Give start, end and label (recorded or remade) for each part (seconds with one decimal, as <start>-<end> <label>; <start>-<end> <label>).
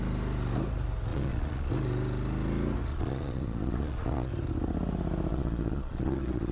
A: 0.0-1.1 recorded; 1.1-1.7 remade; 1.7-2.9 recorded; 2.9-4.3 remade; 4.3-5.3 recorded; 5.3-6.5 remade